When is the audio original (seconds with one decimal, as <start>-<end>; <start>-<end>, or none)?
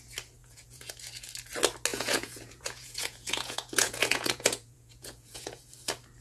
0.0-0.4; 0.9-1.9; 5.6-6.2